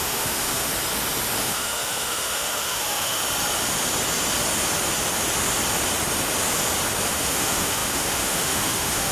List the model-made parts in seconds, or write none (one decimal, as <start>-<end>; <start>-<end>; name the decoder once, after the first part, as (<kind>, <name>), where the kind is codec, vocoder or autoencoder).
0.0-0.7 (autoencoder, DAC-VAE); 1.4-3.2; 7.1-9.1